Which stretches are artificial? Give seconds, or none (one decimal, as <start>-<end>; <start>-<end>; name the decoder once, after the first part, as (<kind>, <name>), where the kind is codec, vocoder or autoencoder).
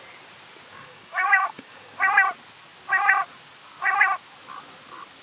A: 0.7-2.0 (codec, DAC)